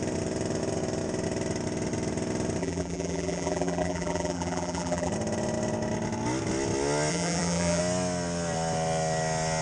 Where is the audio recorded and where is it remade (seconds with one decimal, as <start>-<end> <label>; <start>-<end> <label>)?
0.0-2.6 recorded; 2.6-5.1 remade; 5.1-7.1 recorded; 7.1-7.8 remade; 7.8-9.6 recorded